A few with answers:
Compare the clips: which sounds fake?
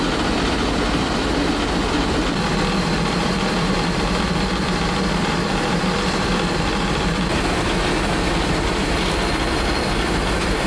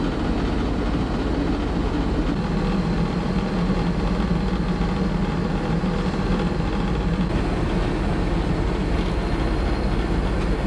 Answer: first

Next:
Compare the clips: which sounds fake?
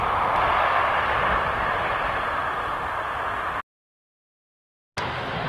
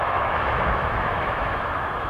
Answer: second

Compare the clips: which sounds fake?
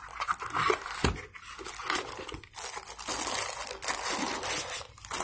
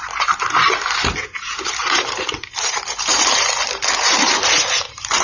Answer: second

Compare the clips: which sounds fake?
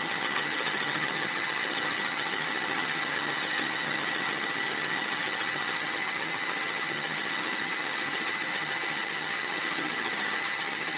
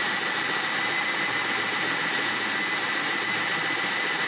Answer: first